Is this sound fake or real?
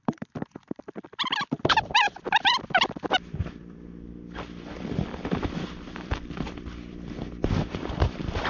fake